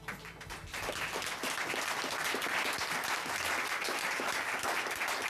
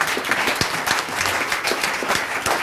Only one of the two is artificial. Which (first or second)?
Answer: second